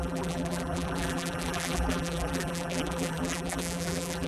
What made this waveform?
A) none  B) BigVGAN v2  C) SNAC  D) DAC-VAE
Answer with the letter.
B